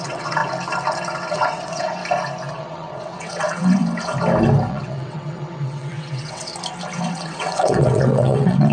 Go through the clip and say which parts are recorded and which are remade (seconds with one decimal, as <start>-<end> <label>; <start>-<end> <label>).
0.0-0.4 remade; 0.4-1.3 recorded; 1.3-2.0 remade; 2.0-2.5 recorded; 2.5-3.8 remade; 3.8-4.7 recorded; 4.7-6.5 remade; 6.5-7.1 recorded; 7.1-8.7 remade